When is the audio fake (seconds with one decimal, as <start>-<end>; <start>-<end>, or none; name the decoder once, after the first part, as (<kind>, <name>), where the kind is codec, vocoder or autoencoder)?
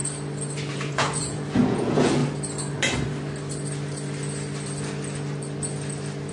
0.7-2.2 (vocoder, Vocos)